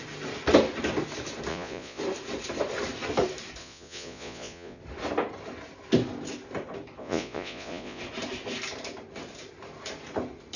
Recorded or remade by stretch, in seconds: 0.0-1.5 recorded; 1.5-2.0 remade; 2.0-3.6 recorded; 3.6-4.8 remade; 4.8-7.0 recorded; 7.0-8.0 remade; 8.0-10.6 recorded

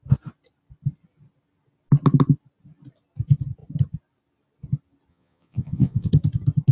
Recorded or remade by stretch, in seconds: 0.0-5.1 recorded; 5.1-6.1 remade; 6.1-6.7 recorded

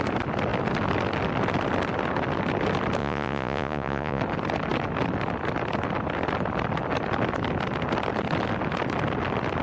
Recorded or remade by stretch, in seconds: 0.0-3.0 recorded; 3.0-4.2 remade; 4.2-9.6 recorded

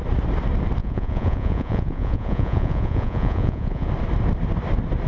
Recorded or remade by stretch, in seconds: 0.0-0.8 recorded; 0.8-3.9 remade; 3.9-5.1 recorded

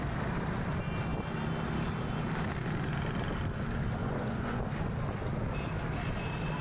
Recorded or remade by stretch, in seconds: 0.0-4.0 recorded; 4.0-4.6 remade; 4.6-6.6 recorded

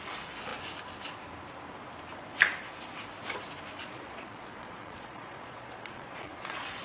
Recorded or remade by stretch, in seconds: 0.0-3.8 recorded; 3.8-6.8 remade

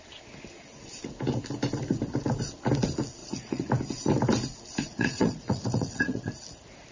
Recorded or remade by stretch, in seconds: 0.0-3.2 recorded; 3.2-3.7 remade; 3.7-4.9 recorded; 4.9-6.3 remade; 6.3-6.9 recorded